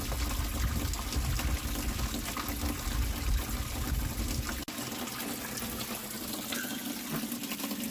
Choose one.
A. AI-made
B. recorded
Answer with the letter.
B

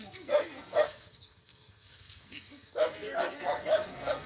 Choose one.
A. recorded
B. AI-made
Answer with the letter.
B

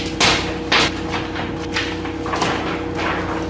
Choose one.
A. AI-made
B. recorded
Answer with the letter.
B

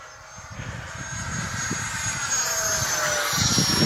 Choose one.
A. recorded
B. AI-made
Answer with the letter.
A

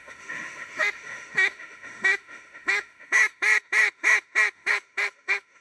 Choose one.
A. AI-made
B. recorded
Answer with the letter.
A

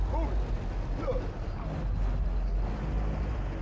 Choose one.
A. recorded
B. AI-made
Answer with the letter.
A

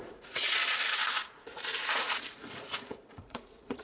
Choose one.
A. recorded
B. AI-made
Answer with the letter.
B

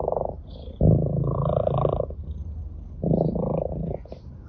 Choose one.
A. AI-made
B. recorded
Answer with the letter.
B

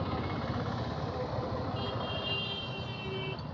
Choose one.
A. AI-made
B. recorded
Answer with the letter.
B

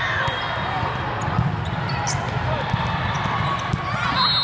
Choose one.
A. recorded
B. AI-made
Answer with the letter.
A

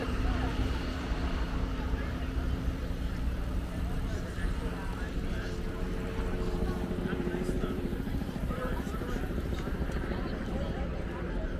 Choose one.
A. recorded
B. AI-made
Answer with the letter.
B